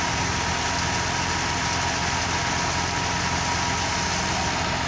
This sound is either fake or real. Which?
real